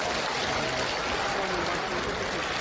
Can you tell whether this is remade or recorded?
recorded